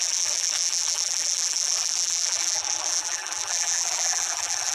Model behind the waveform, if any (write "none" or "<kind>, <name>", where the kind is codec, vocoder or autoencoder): vocoder, BigVGAN v2